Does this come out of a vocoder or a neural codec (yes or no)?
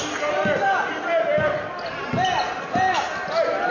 no